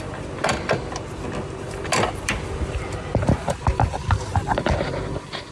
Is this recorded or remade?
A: remade